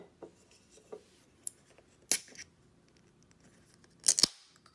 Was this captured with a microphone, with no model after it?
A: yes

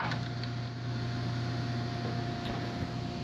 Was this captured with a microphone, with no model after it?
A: yes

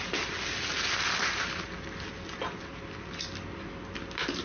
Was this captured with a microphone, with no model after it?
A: yes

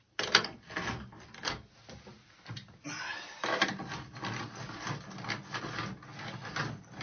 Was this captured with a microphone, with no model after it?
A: yes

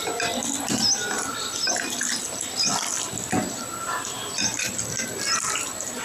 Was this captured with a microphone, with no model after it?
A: yes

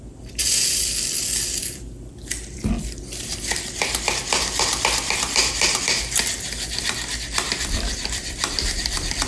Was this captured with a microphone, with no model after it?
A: no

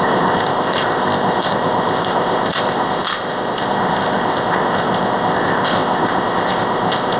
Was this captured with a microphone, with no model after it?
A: no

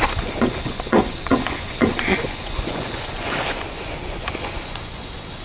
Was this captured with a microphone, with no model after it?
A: no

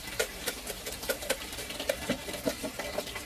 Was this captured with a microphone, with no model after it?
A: no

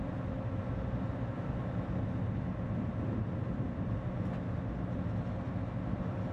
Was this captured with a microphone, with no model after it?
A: yes